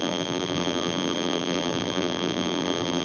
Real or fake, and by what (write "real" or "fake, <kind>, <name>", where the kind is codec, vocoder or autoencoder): fake, vocoder, BigVGAN v2